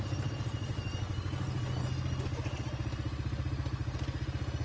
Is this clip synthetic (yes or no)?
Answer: no